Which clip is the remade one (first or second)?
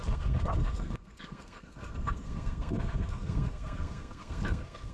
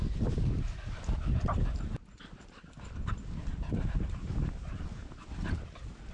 first